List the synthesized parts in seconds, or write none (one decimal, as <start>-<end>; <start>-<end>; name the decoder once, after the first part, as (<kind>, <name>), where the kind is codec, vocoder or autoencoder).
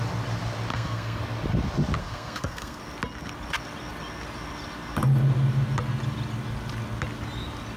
0.7-1.2 (codec, SNAC); 2.0-2.8